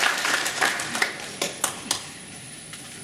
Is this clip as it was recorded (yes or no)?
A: no